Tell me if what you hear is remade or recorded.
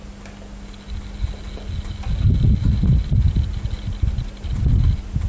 recorded